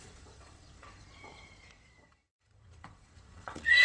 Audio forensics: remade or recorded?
remade